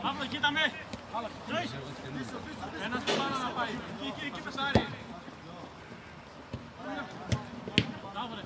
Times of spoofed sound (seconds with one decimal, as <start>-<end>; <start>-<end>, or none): none